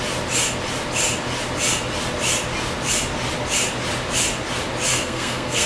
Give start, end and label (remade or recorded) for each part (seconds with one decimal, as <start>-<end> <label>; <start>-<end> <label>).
0.0-4.9 recorded; 4.9-5.7 remade